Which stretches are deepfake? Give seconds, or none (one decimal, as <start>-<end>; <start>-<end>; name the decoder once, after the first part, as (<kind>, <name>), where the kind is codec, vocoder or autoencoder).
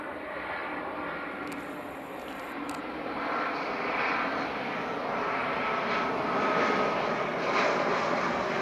none